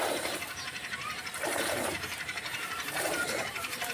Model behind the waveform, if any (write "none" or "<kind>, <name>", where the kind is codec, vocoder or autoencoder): vocoder, BigVGAN v2